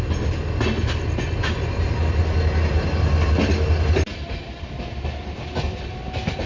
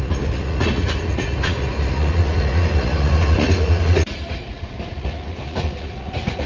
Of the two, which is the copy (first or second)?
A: second